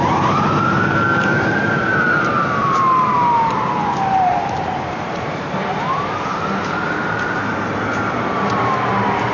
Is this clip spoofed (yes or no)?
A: yes